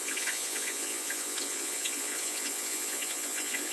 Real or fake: fake